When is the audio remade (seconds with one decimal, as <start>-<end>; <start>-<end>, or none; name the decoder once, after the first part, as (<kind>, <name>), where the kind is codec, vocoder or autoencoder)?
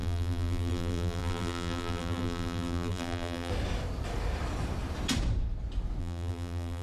0.0-3.5 (vocoder, BigVGAN v2); 6.0-6.8